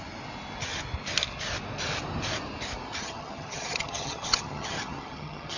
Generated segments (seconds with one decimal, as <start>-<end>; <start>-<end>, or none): 3.0-5.6